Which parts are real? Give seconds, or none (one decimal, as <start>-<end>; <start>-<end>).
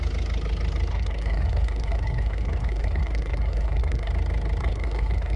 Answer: 0.0-0.9; 4.1-4.6